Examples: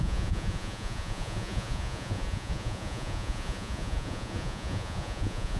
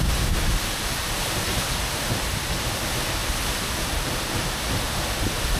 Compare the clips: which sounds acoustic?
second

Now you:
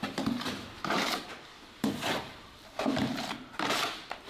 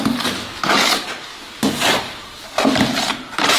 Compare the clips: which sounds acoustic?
second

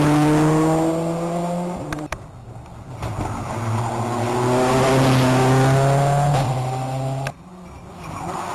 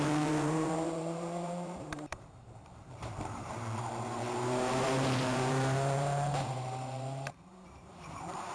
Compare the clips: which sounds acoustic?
first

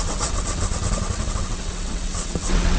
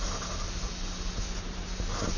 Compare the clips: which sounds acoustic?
second